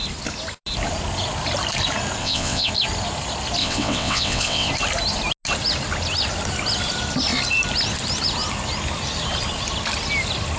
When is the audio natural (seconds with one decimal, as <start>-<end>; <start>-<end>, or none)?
0.0-2.2; 2.7-3.6; 4.7-10.6